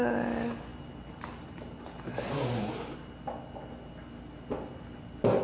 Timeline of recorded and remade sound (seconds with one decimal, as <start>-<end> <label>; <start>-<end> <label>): 0.0-0.7 recorded; 0.7-2.0 remade; 2.0-5.4 recorded